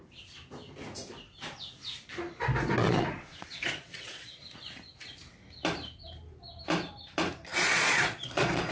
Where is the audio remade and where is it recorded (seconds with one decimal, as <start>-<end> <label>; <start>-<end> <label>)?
0.0-2.8 recorded; 2.8-4.4 remade; 4.4-7.5 recorded; 7.5-8.7 remade

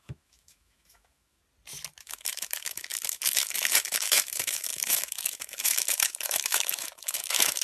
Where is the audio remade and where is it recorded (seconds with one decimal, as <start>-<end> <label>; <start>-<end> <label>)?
0.0-1.4 remade; 1.4-2.0 recorded; 2.0-7.6 remade

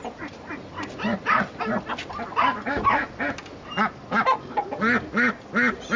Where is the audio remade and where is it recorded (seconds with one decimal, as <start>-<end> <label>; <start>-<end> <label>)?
0.0-6.0 recorded